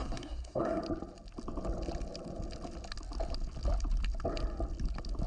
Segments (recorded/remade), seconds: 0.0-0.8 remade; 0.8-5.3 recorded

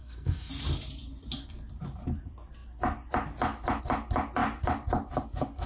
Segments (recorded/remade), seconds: 0.0-0.5 remade; 0.5-5.7 recorded

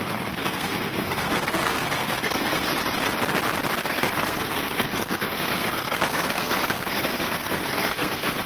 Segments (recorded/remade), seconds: 0.0-2.7 remade; 2.7-3.8 recorded; 3.8-8.5 remade